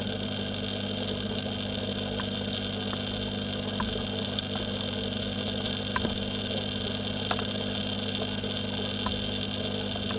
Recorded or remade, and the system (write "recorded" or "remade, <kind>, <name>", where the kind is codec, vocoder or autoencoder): recorded